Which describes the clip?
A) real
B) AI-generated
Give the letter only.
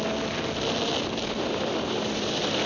A